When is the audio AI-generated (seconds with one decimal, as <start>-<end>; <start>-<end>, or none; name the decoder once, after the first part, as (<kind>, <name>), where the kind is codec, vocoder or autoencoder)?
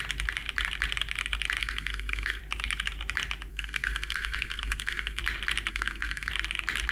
1.6-2.4 (codec, SNAC); 3.5-5.2; 5.7-6.3